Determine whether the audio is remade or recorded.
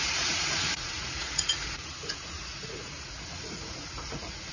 remade